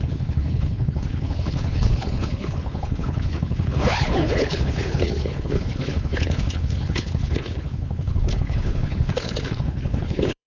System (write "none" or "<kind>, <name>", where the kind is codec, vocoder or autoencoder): codec, HILCodec